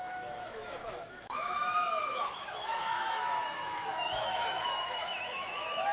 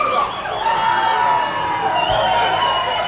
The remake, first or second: first